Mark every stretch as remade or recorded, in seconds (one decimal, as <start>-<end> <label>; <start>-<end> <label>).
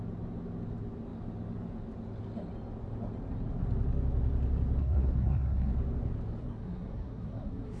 0.0-4.8 recorded; 4.8-5.7 remade; 5.7-6.4 recorded; 6.4-7.8 remade